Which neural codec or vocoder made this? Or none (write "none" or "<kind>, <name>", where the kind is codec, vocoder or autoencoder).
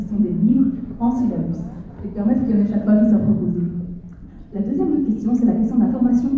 none